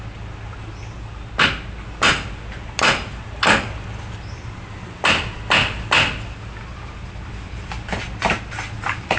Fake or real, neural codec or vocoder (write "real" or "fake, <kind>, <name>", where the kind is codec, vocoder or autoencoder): real